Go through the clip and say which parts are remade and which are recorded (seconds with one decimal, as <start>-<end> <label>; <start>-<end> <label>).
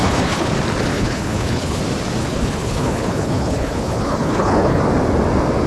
0.0-0.5 remade; 0.5-0.9 recorded; 0.9-1.8 remade; 1.8-2.2 recorded; 2.2-4.8 remade; 4.8-5.7 recorded